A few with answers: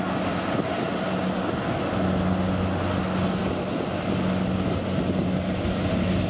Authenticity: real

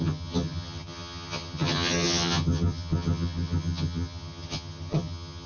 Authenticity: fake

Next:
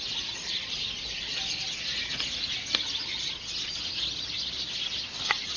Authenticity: real